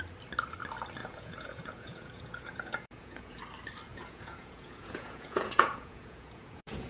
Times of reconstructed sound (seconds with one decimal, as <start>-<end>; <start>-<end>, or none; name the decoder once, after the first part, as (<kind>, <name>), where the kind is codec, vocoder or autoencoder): 1.0-3.4 (vocoder, Vocos); 3.9-6.9